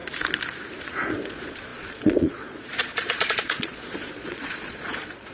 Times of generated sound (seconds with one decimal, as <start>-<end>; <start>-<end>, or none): 0.8-5.3

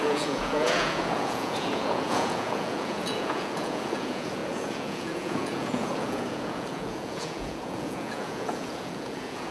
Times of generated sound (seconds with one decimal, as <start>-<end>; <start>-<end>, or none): 0.0-9.5

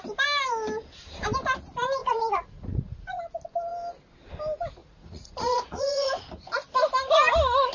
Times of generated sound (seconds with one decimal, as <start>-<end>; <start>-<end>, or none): 2.0-3.2; 4.8-6.1

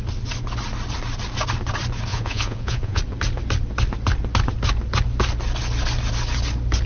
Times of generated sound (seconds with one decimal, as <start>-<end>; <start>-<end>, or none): 2.1-3.0

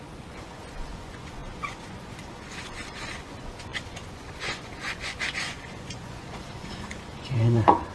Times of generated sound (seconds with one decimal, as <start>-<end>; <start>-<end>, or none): 0.0-7.9

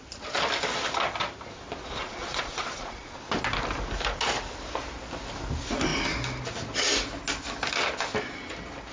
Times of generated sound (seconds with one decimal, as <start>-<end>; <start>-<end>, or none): 2.0-3.2

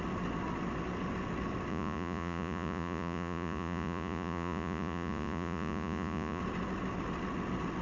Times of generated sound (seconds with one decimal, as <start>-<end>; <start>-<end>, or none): 1.7-6.4